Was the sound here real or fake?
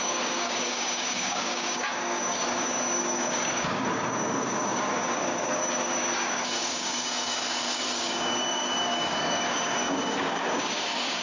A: fake